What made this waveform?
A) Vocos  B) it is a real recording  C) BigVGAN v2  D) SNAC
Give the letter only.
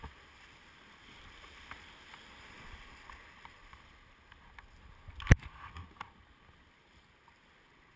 B